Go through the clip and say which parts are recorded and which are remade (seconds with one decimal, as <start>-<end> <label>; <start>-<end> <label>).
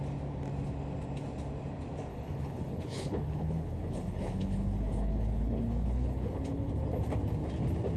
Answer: 0.0-2.1 recorded; 2.1-6.7 remade; 6.7-8.0 recorded